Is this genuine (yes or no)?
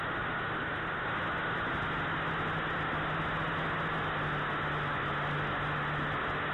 yes